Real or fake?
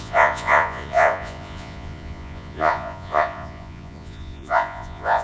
fake